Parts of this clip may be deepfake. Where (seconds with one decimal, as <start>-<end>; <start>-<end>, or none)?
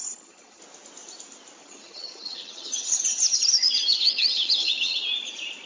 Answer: 0.0-0.6; 1.6-5.0